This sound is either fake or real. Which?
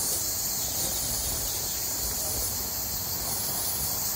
real